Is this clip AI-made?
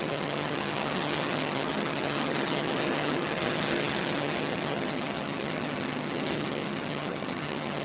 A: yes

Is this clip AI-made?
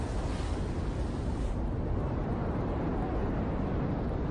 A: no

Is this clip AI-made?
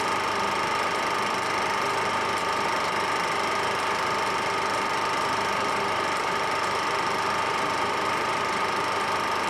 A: no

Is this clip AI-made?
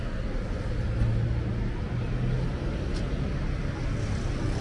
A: no